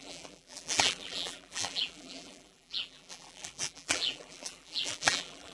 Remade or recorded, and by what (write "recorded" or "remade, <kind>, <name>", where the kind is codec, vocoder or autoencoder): remade, vocoder, BigVGAN v2